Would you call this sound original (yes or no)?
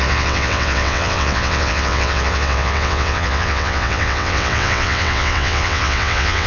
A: no